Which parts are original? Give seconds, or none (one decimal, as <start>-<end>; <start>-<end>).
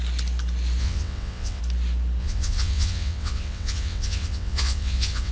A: 0.0-0.8; 1.6-2.2